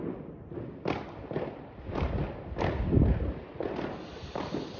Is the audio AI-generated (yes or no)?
no